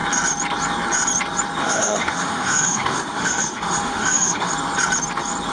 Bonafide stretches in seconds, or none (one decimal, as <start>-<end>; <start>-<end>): 0.0-1.6; 4.5-5.5